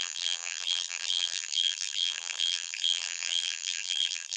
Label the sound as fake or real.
fake